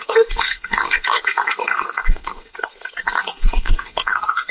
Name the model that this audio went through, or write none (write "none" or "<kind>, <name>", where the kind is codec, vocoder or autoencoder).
codec, SNAC